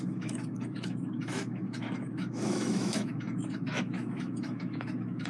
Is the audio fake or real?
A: fake